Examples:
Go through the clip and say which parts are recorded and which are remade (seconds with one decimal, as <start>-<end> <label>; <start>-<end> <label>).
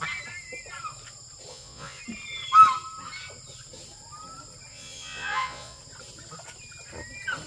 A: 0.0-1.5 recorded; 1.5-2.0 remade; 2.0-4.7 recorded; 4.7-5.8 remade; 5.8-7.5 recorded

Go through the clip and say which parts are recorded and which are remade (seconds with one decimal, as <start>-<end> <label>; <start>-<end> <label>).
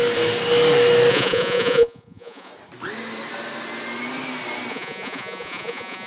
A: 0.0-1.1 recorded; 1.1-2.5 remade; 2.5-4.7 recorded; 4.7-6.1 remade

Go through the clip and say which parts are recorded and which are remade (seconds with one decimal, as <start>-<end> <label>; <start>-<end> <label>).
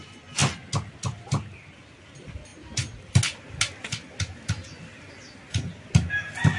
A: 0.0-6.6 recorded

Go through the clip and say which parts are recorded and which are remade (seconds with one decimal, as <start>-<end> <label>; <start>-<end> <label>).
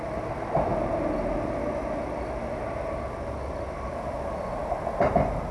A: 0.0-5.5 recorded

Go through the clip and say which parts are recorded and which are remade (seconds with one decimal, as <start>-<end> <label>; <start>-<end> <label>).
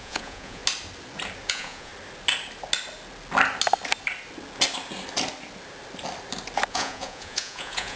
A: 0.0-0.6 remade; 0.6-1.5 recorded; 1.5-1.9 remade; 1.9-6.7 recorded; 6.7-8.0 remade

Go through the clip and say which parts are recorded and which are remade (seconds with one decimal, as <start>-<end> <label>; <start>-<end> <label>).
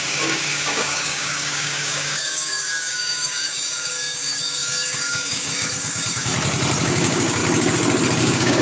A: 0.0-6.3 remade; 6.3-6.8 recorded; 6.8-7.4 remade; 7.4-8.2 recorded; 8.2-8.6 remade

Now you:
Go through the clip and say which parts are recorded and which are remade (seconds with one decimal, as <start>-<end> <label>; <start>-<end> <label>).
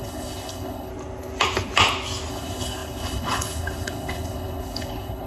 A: 0.0-0.9 remade; 0.9-2.3 recorded; 2.3-5.3 remade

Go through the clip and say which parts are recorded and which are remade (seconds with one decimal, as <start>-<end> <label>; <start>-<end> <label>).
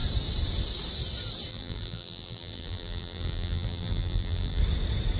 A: 0.0-1.5 recorded; 1.5-4.6 remade; 4.6-5.2 recorded